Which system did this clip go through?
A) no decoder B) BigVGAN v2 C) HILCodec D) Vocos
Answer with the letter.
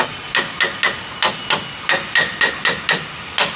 A